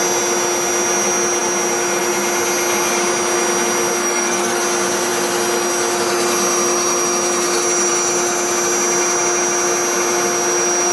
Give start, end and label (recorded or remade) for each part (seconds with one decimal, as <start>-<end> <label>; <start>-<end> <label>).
0.0-4.0 recorded; 4.0-4.6 remade; 4.6-10.9 recorded